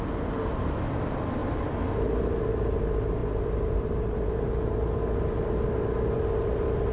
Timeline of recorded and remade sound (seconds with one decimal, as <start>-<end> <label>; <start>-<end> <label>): 0.0-3.2 recorded; 3.2-4.8 remade; 4.8-6.9 recorded